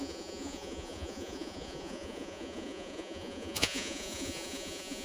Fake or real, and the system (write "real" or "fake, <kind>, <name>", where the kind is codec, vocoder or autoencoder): fake, vocoder, Vocos